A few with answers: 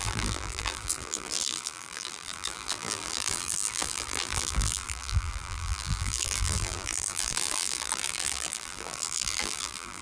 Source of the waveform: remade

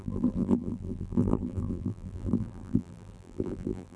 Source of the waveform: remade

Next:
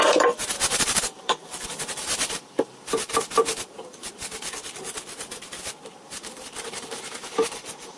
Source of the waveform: remade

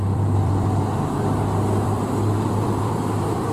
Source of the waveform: remade